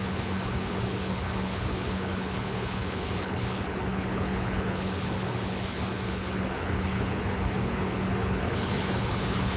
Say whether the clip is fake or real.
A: fake